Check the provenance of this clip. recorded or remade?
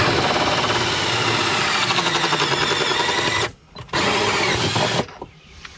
recorded